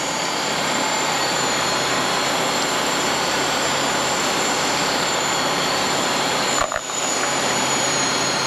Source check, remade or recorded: remade